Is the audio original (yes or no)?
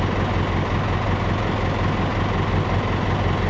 yes